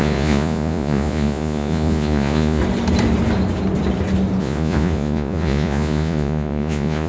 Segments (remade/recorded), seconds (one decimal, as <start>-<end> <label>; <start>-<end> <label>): 0.0-2.6 remade; 2.6-4.4 recorded; 4.4-7.1 remade